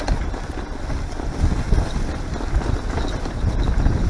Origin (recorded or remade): recorded